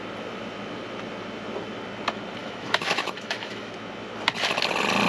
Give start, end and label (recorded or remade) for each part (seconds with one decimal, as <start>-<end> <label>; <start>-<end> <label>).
0.0-2.4 recorded; 2.4-3.7 remade; 3.7-5.1 recorded